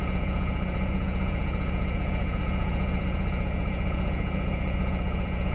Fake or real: fake